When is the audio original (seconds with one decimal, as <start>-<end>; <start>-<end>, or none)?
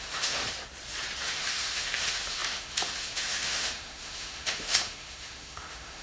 0.4-1.2